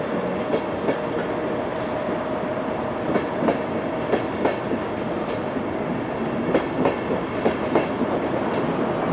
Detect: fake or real real